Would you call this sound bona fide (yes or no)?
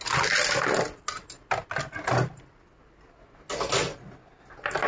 yes